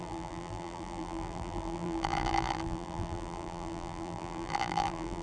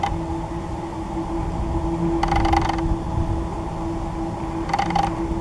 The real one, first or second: second